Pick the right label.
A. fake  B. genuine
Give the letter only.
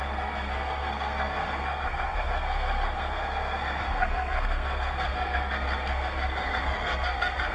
A